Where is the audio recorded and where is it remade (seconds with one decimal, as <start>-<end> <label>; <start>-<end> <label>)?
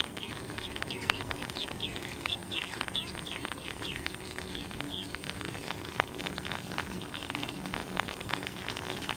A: 0.0-9.2 remade